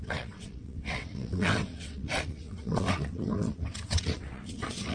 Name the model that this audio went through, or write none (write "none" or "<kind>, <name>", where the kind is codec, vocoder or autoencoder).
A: vocoder, WaveNeXt